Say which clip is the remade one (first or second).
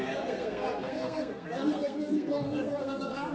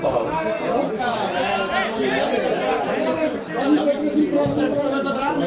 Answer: first